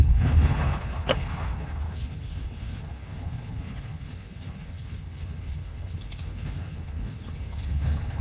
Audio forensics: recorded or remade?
remade